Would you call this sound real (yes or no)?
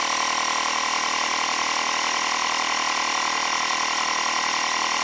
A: yes